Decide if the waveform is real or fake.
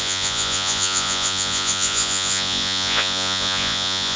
fake